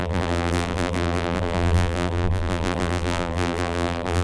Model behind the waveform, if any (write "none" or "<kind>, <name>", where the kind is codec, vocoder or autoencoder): vocoder, BigVGAN v2